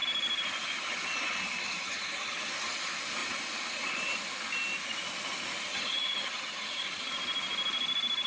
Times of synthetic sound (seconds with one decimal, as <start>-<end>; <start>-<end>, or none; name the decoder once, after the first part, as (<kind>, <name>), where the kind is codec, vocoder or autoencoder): 1.6-2.5 (vocoder, HiFi-GAN); 5.7-7.1